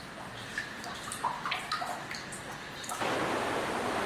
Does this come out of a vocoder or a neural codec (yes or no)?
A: no